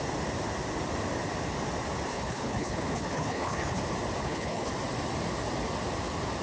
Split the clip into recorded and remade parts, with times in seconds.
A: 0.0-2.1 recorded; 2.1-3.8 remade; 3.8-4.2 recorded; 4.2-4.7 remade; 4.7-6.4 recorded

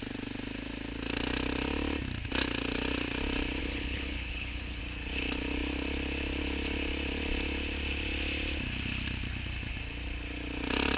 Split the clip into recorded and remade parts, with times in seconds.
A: 0.0-3.6 recorded; 3.6-4.8 remade; 4.8-11.0 recorded

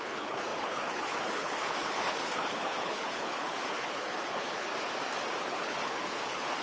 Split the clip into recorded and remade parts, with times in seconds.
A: 0.0-4.7 remade; 4.7-5.4 recorded; 5.4-6.6 remade

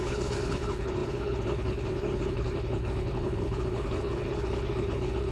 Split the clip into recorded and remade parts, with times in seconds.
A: 0.0-5.3 remade